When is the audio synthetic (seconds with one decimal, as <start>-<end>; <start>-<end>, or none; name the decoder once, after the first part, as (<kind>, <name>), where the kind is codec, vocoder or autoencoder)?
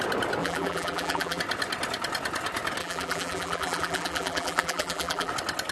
0.4-1.4 (vocoder, BigVGAN v2); 2.8-5.3